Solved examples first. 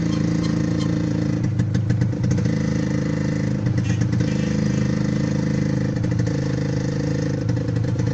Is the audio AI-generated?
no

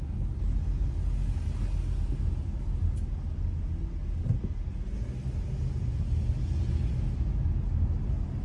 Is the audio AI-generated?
no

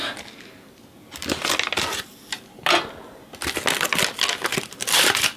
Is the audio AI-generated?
no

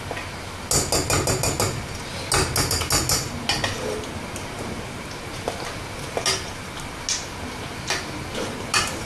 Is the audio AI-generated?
no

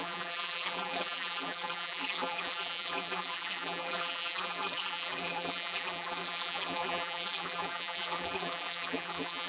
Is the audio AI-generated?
yes